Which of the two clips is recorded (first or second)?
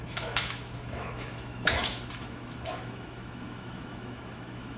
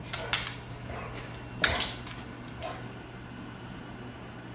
second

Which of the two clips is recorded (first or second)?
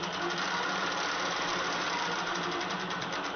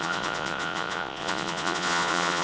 first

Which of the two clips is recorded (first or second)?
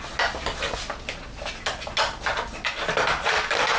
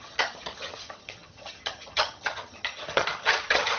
first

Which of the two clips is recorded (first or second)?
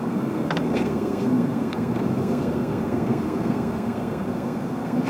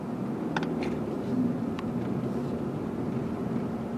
second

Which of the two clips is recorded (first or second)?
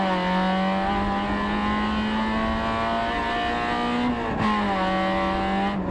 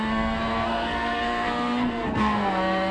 first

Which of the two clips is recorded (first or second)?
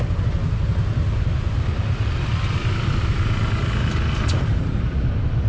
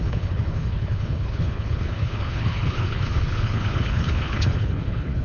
first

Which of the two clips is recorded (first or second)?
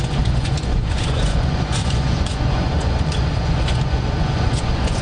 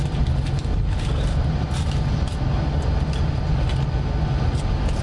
second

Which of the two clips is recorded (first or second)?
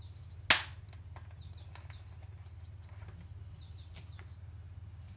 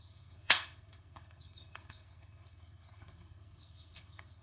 first